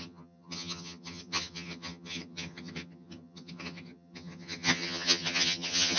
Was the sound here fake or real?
fake